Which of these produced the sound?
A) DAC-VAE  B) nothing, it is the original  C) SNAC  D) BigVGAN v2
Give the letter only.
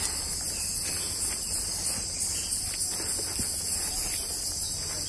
B